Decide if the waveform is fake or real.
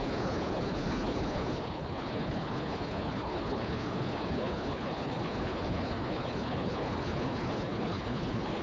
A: fake